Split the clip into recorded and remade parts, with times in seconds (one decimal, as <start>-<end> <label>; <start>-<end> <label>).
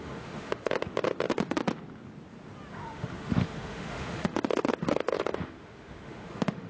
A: 0.0-0.8 remade; 0.8-2.7 recorded; 2.7-6.7 remade